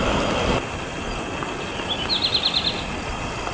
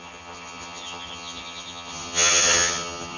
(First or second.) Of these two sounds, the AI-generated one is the second